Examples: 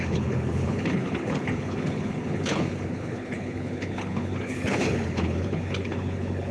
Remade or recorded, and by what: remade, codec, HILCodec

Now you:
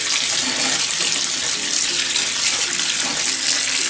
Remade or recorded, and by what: recorded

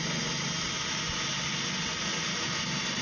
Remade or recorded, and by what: recorded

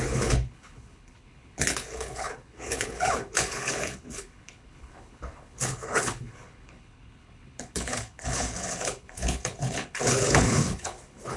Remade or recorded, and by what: remade, codec, HILCodec